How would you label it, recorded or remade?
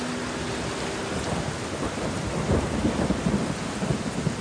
recorded